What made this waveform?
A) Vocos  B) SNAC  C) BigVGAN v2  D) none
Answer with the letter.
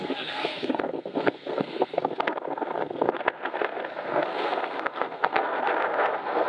B